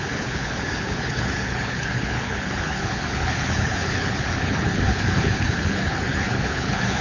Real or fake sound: fake